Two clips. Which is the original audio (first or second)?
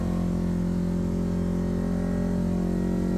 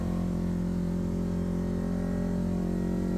first